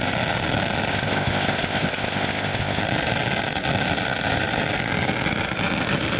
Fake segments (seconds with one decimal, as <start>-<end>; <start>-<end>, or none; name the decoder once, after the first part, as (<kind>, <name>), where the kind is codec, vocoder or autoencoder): 0.9-2.8 (codec, ZipCodec)